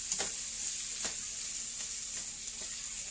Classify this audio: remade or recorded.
recorded